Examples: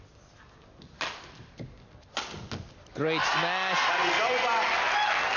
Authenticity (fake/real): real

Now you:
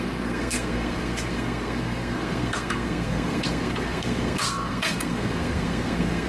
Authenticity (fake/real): fake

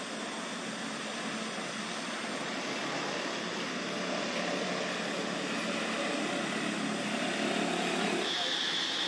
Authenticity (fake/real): real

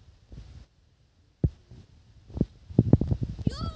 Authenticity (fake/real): real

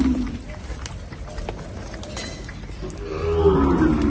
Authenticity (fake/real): real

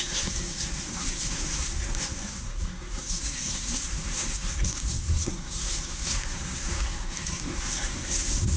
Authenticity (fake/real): fake